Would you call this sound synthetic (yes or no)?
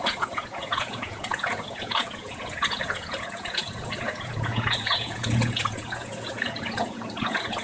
yes